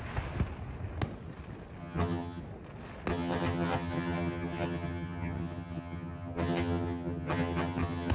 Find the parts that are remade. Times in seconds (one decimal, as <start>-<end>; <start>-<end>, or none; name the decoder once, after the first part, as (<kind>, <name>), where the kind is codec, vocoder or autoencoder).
1.8-2.4 (vocoder, HiFi-GAN); 3.1-8.1